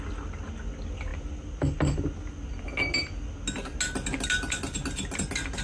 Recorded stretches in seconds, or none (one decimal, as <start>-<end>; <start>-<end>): 0.0-5.6